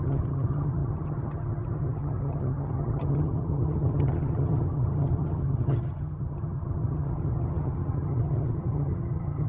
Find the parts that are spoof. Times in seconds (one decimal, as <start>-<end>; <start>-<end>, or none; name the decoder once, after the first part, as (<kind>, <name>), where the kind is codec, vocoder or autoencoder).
0.0-9.5 (vocoder, HiFi-GAN)